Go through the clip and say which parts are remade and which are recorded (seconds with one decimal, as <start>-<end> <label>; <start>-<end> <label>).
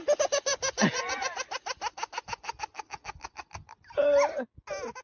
0.0-5.0 recorded